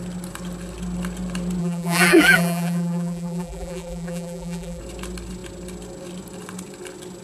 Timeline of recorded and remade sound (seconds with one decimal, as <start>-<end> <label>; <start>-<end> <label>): 0.0-1.6 recorded; 1.6-4.8 remade; 4.8-7.2 recorded